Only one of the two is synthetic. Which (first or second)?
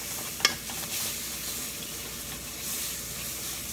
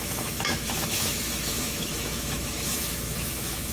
second